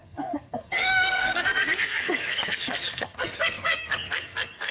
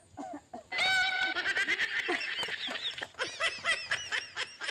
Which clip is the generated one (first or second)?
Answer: first